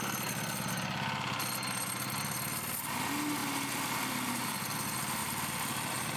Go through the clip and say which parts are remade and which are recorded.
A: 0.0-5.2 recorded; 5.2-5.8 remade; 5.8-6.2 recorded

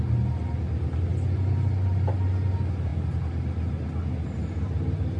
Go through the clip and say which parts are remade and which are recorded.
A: 0.0-5.2 recorded

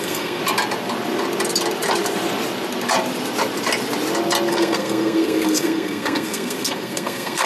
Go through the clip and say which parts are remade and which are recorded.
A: 0.0-0.4 remade; 0.4-4.5 recorded; 4.5-7.5 remade

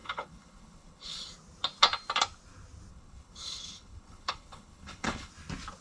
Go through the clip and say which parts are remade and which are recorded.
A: 0.0-1.3 remade; 1.3-2.9 recorded; 2.9-5.3 remade; 5.3-5.8 recorded

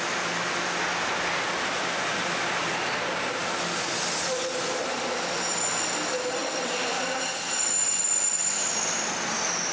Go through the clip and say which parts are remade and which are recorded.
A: 0.0-9.7 recorded

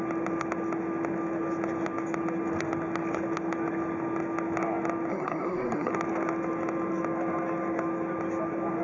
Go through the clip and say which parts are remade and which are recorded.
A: 0.0-5.1 recorded; 5.1-5.9 remade; 5.9-8.8 recorded

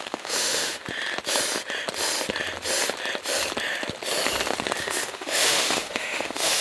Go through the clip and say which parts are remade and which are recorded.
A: 0.0-0.8 remade; 0.8-4.8 recorded; 4.8-6.6 remade